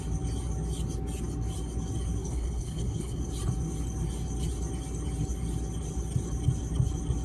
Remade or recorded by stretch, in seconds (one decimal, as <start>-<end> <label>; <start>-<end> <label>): 0.0-2.2 recorded; 2.2-3.2 remade; 3.2-7.2 recorded